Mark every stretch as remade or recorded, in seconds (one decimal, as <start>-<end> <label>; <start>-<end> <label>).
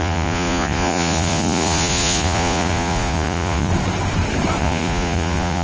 0.0-3.7 remade; 3.7-4.6 recorded; 4.6-5.6 remade